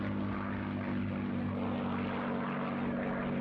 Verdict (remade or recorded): recorded